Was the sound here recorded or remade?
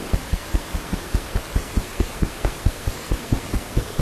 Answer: remade